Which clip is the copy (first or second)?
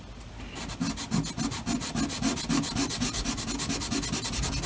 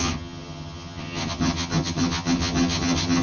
second